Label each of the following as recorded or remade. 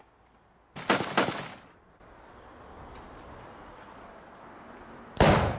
recorded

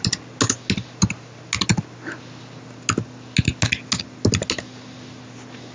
recorded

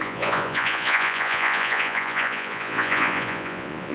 remade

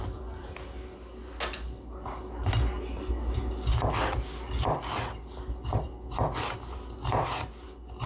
recorded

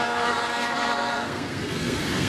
remade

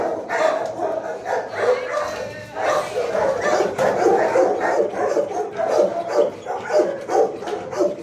recorded